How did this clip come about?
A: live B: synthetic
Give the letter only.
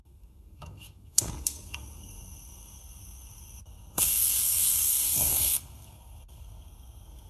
B